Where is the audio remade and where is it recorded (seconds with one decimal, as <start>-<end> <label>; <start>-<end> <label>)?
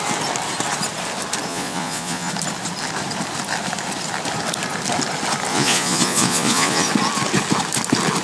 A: 0.0-1.5 recorded; 1.5-2.3 remade; 2.3-5.5 recorded; 5.5-6.9 remade; 6.9-8.2 recorded